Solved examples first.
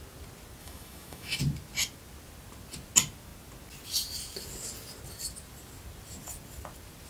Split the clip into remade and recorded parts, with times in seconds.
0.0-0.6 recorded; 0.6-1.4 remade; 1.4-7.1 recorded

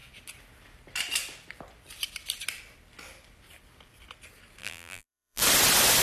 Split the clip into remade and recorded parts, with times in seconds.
0.0-4.6 recorded; 4.6-5.4 remade; 5.4-6.0 recorded

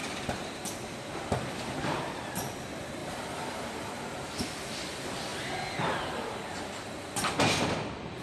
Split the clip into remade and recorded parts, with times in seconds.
0.0-2.0 remade; 2.0-3.0 recorded; 3.0-3.8 remade; 3.8-8.2 recorded

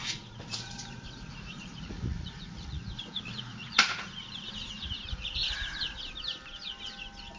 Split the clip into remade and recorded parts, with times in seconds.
0.0-5.4 remade; 5.4-7.4 recorded

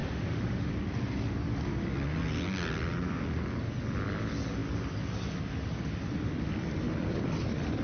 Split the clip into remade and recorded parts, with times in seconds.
0.0-0.7 remade; 0.7-7.8 recorded